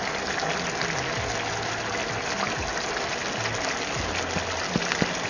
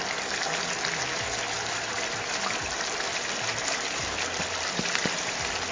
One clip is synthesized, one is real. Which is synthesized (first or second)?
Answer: second